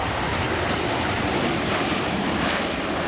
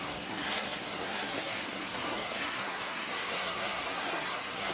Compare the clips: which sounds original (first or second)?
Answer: first